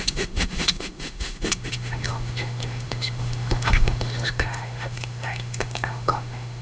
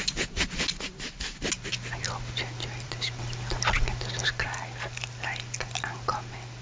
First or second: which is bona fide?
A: second